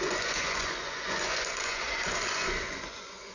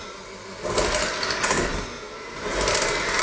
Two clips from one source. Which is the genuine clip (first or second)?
second